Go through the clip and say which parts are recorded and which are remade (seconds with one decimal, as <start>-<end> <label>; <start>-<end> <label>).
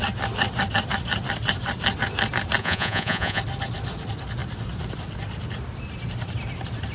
0.0-2.6 recorded; 2.6-3.4 remade; 3.4-6.9 recorded